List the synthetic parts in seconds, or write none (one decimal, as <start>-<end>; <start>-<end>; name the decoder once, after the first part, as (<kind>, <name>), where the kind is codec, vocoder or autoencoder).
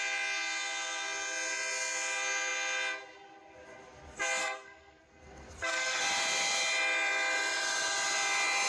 4.4-6.0 (codec, SNAC)